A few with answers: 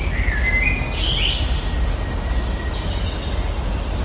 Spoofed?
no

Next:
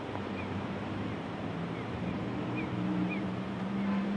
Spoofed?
yes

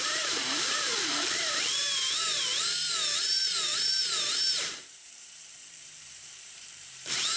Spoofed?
yes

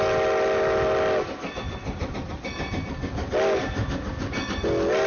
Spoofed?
no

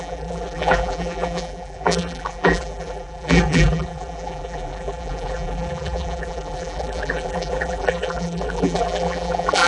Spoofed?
yes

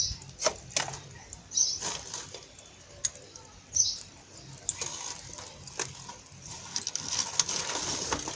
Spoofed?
no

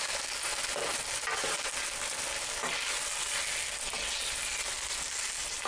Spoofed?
no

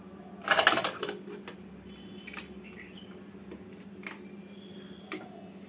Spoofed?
no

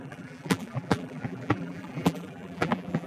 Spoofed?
yes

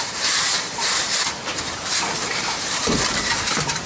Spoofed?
yes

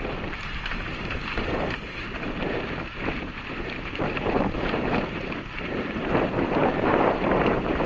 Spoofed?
yes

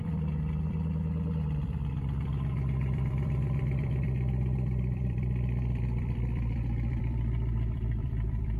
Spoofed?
yes